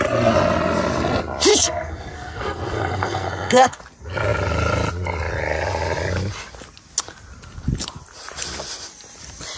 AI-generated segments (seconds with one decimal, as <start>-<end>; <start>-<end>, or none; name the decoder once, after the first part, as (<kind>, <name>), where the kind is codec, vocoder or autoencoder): 1.5-3.8 (codec, SNAC)